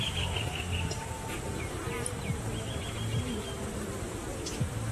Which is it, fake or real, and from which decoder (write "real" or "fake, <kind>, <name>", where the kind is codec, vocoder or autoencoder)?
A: real